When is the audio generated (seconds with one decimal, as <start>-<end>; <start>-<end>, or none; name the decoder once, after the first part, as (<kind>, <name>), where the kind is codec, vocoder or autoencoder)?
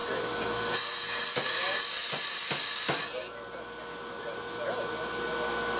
0.0-0.8 (vocoder, BigVGAN v2); 2.0-2.7